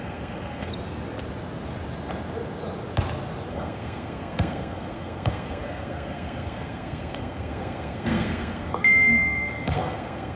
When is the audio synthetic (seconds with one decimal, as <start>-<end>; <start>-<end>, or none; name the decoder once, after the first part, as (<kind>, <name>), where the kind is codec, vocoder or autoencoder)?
0.0-0.7 (codec, SNAC); 3.5-10.4